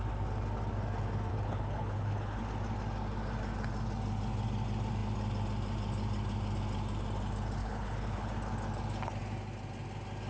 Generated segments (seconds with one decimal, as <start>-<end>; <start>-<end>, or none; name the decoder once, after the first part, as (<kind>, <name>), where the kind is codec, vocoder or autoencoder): 1.3-2.4 (codec, HILCodec); 7.6-8.3